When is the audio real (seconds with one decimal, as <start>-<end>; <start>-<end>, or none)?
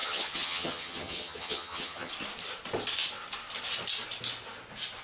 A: 2.1-5.0